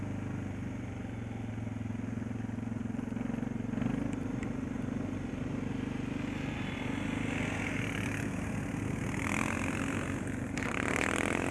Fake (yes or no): no